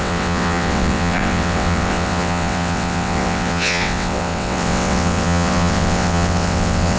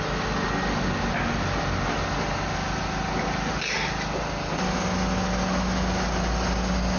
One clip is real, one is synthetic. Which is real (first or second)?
second